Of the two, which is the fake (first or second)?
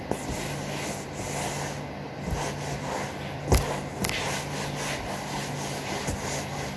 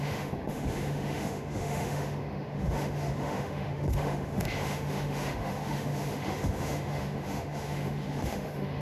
second